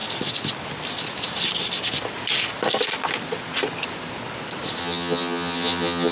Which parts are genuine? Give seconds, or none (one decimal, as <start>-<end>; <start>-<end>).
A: 0.0-4.8